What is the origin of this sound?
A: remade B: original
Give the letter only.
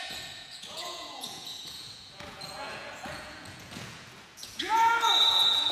A